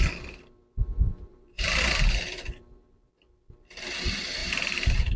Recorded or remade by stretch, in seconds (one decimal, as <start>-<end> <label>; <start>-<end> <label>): 0.0-1.3 recorded; 1.3-1.8 remade; 1.8-4.4 recorded; 4.4-5.2 remade